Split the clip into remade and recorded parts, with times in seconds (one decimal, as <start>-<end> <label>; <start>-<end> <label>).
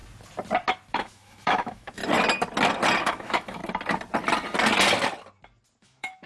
0.0-0.9 recorded; 0.9-2.0 remade; 2.0-3.0 recorded; 3.0-3.6 remade; 3.6-5.8 recorded; 5.8-6.3 remade